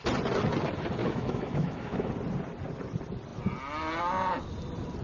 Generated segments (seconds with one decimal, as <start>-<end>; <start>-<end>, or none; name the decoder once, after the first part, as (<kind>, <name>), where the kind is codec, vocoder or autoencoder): 1.0-2.1 (autoencoder, DAC-VAE)